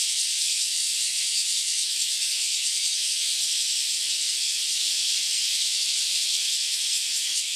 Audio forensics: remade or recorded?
remade